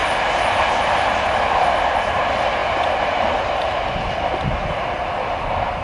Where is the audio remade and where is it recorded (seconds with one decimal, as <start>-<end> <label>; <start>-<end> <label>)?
0.0-5.8 recorded